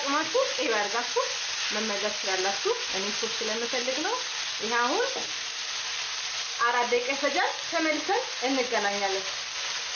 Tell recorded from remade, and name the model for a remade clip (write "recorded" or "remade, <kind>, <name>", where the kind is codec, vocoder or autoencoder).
recorded